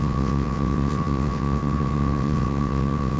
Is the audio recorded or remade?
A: remade